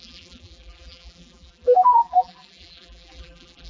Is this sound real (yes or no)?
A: no